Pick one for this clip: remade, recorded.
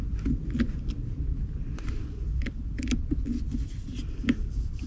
recorded